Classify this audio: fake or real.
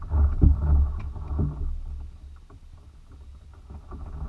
real